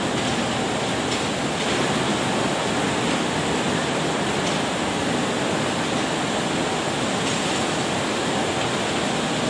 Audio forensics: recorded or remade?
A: recorded